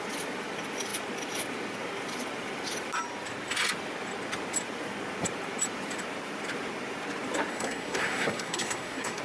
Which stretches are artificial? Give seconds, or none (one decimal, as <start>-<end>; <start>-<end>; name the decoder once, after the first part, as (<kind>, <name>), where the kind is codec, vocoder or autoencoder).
7.5-9.2 (codec, SNAC)